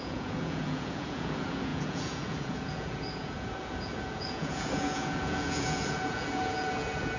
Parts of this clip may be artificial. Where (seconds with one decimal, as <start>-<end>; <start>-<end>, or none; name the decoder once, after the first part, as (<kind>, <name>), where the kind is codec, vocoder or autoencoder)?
0.0-7.2 (vocoder, Vocos)